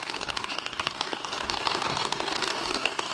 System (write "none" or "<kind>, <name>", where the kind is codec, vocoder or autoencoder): codec, DAC